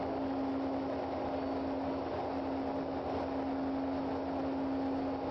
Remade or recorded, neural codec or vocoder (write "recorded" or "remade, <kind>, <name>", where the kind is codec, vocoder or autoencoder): recorded